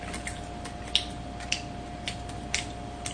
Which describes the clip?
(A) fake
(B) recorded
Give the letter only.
B